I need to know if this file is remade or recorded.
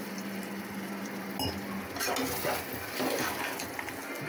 recorded